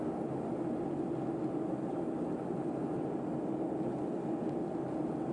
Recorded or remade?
recorded